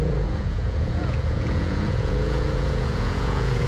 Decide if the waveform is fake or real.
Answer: fake